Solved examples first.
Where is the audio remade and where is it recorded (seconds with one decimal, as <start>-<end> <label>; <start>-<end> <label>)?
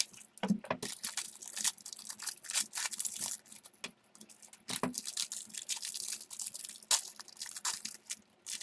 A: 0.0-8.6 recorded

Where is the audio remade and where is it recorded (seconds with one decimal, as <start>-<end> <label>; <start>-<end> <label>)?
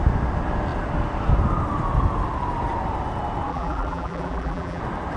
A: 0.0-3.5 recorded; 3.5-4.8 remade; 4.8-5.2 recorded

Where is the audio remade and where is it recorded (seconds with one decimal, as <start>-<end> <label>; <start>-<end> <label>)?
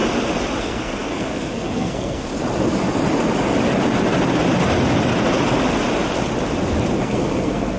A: 0.0-0.6 recorded; 0.6-2.3 remade; 2.3-7.0 recorded; 7.0-7.8 remade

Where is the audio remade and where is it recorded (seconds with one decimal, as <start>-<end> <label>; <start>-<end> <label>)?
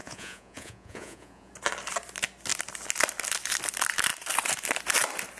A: 0.0-1.5 remade; 1.5-5.4 recorded